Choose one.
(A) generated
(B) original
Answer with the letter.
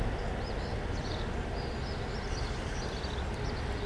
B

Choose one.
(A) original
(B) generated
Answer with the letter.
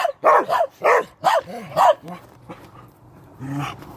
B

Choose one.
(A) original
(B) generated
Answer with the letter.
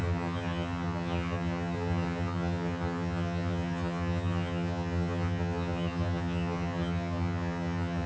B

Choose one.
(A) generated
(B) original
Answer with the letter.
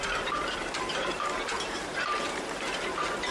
A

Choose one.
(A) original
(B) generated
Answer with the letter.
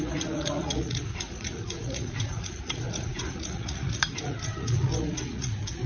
B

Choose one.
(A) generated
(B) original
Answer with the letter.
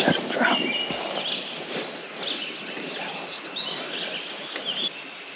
B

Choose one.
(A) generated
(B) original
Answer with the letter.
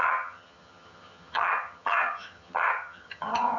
A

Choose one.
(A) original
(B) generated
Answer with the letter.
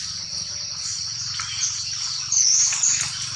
A